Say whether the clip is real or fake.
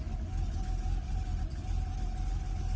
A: real